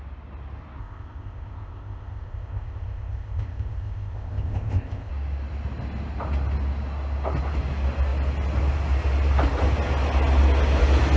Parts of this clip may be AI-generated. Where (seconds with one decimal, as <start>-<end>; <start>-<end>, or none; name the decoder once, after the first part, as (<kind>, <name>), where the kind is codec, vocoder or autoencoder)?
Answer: 0.8-5.1 (codec, ZipCodec)